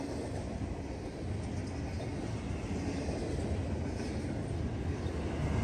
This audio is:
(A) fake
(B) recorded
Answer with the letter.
B